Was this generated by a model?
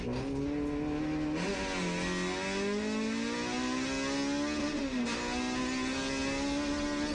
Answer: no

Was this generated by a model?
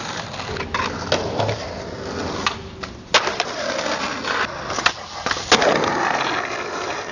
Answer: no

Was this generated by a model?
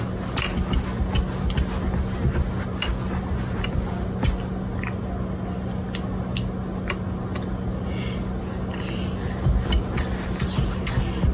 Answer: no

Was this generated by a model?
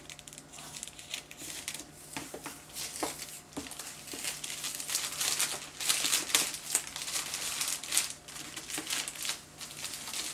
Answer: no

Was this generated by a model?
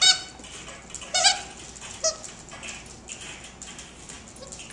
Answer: no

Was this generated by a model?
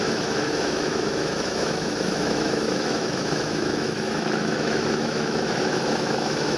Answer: yes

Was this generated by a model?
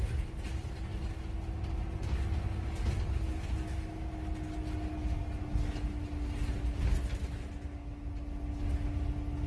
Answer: no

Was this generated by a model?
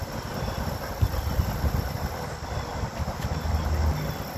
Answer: no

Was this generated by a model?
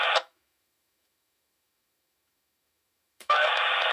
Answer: yes